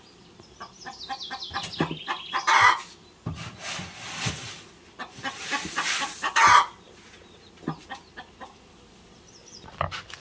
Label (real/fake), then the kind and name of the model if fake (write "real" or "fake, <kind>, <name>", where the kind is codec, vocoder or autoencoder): real